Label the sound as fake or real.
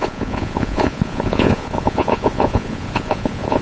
fake